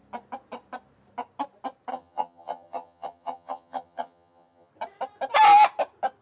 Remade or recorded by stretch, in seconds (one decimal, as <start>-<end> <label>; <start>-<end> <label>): 0.0-1.9 recorded; 1.9-4.7 remade; 4.7-6.2 recorded